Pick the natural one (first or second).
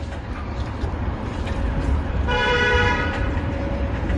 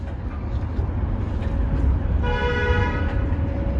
second